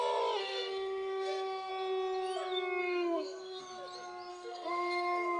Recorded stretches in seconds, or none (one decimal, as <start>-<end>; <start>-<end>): 0.0-0.4; 1.7-2.8; 3.6-4.3